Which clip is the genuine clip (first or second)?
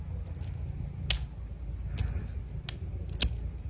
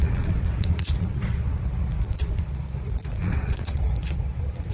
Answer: first